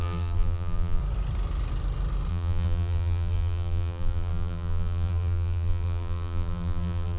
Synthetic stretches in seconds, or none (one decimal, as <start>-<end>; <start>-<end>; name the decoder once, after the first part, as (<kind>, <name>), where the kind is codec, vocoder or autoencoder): 0.0-1.0 (vocoder, BigVGAN v2); 2.3-7.2